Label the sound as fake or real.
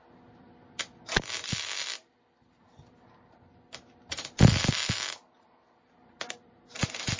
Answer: real